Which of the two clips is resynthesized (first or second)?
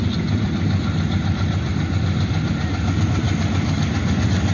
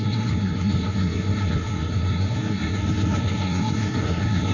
second